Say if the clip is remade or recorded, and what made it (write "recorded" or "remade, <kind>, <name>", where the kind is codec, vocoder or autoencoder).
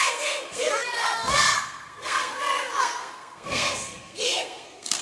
remade, codec, SNAC